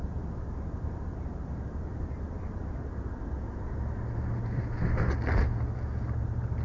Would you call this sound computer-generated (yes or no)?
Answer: no